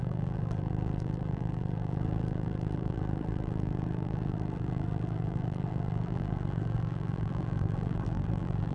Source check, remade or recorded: remade